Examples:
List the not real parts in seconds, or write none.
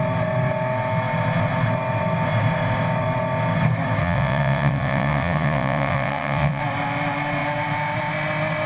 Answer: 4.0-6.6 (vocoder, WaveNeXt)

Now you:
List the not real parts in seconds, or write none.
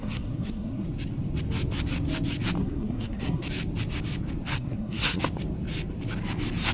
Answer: 0.0-0.9 (codec, SNAC); 2.6-3.5; 4.5-5.2